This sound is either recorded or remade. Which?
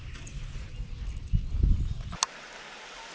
recorded